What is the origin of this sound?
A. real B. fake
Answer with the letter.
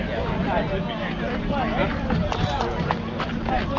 A